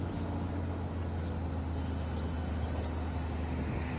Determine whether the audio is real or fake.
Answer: real